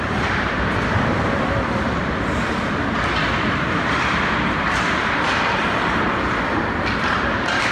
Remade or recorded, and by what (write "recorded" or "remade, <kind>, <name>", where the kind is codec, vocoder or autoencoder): remade, vocoder, BigVGAN v2